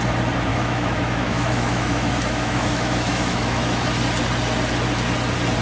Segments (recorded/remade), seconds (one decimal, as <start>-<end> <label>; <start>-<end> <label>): 0.0-0.5 recorded; 0.5-3.9 remade; 3.9-5.6 recorded